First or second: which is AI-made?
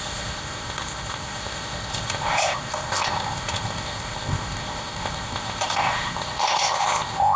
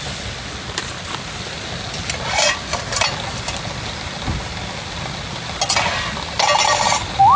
first